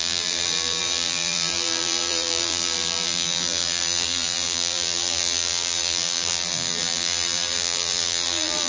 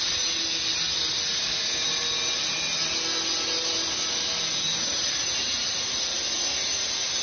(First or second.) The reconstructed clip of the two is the first